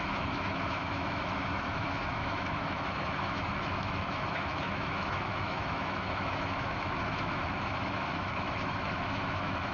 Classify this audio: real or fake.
fake